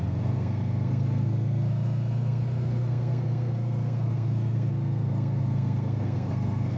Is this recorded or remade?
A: remade